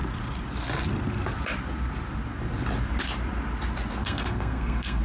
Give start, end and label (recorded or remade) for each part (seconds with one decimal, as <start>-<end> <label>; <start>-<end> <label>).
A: 0.0-4.0 recorded; 4.0-5.0 remade